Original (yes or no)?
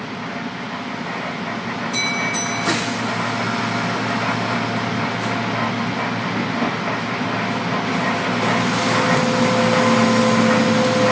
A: yes